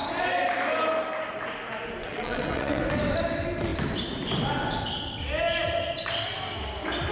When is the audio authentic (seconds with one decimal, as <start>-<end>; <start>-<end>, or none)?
0.0-2.0; 2.8-7.1